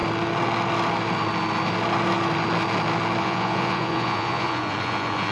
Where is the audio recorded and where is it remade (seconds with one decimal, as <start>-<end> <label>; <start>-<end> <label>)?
0.0-3.2 recorded; 3.2-5.3 remade